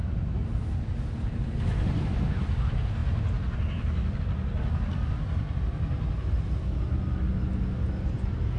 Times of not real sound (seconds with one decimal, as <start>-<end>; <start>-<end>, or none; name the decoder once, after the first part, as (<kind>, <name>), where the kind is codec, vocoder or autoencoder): 3.0-4.2 (vocoder, BigVGAN v2)